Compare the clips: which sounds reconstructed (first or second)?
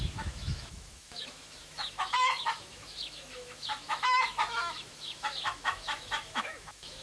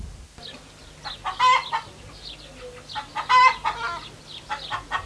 first